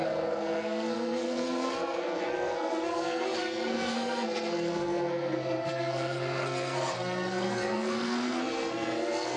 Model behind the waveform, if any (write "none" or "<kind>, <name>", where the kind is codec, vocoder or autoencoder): codec, SNAC